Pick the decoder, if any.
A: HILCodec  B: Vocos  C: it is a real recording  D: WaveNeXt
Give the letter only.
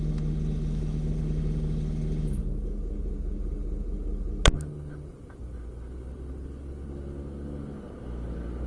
C